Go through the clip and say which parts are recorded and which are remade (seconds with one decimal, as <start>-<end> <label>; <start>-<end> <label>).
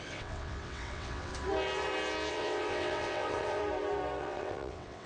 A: 0.0-1.3 remade; 1.3-2.3 recorded; 2.3-3.6 remade; 3.6-4.2 recorded; 4.2-5.1 remade